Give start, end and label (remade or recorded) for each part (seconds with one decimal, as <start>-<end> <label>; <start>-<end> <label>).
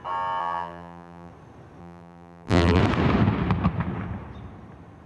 0.0-0.4 recorded; 0.4-1.3 remade; 1.3-1.8 recorded; 1.8-2.8 remade; 2.8-5.1 recorded